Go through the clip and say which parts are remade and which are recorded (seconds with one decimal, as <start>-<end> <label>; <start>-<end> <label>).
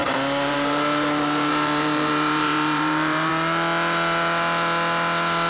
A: 0.0-3.3 remade; 3.3-5.5 recorded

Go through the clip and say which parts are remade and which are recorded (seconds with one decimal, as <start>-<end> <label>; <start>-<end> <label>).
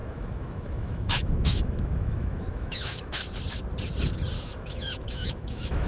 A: 0.0-3.2 remade; 3.2-4.4 recorded; 4.4-5.9 remade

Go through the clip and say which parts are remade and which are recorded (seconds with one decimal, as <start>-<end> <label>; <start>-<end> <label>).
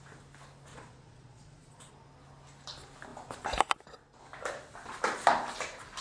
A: 0.0-0.7 recorded; 0.7-1.9 remade; 1.9-6.0 recorded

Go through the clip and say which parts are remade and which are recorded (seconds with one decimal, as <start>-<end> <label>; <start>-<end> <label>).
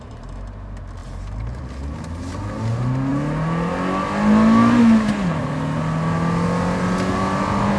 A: 0.0-7.8 recorded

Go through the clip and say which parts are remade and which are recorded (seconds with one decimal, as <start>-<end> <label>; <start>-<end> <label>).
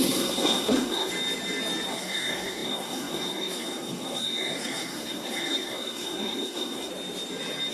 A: 0.0-1.1 remade; 1.1-1.9 recorded; 1.9-6.9 remade; 6.9-7.7 recorded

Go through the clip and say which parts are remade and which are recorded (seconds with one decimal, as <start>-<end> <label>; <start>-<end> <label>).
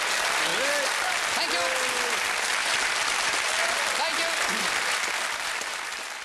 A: 0.0-6.2 recorded